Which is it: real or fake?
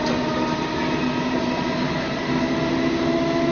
real